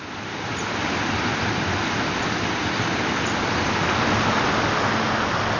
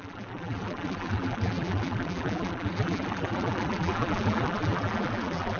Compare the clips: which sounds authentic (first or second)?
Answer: first